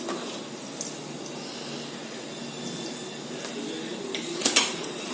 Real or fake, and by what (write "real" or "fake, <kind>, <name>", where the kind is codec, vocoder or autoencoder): real